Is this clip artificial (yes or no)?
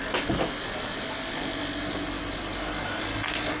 no